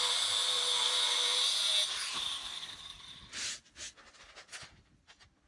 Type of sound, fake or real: real